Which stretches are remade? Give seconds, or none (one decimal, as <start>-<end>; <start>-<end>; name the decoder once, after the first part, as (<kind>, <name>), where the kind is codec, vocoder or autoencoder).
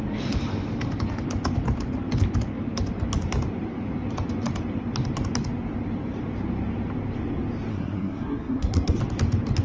7.7-9.0 (codec, SNAC)